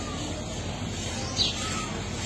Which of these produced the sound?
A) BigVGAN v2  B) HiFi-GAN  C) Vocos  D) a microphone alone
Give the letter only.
D